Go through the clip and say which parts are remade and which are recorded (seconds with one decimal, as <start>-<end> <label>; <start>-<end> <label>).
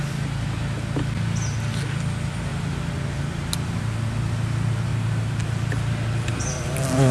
0.0-2.5 recorded; 2.5-3.8 remade; 3.8-4.9 recorded; 4.9-6.3 remade; 6.3-7.1 recorded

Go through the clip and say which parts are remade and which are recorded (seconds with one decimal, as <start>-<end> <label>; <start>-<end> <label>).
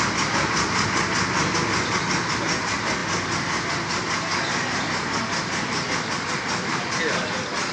0.0-7.7 recorded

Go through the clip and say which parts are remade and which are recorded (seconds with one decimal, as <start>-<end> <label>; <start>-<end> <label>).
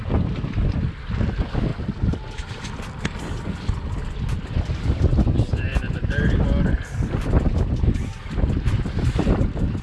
0.0-9.8 recorded